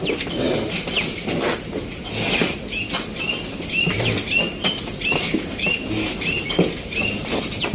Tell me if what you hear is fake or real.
real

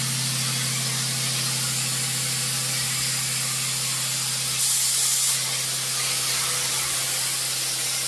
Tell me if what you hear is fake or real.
real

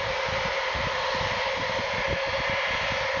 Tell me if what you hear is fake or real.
real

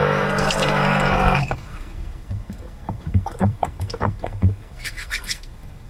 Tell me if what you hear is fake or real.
fake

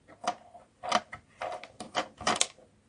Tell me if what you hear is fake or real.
real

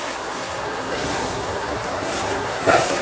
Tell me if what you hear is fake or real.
fake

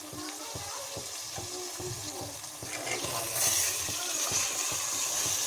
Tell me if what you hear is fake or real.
real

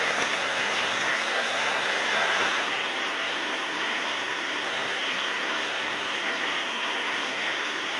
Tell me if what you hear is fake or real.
fake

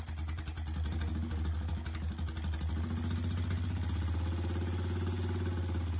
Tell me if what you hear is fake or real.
real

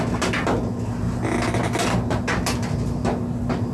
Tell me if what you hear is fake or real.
real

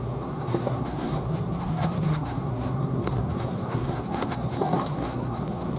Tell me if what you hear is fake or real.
fake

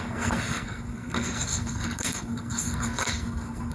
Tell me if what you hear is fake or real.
fake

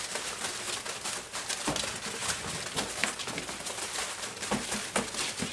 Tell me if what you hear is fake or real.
real